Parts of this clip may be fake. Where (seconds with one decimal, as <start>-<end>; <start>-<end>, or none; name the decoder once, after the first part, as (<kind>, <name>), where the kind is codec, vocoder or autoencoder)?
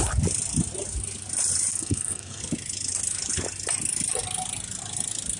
1.7-2.4 (codec, SNAC)